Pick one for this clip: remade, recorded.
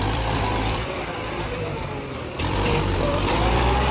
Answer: remade